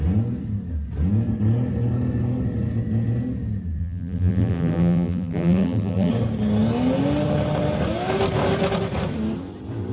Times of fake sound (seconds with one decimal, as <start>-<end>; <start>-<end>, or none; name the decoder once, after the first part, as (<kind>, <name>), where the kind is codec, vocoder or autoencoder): 3.8-6.1 (vocoder, BigVGAN v2)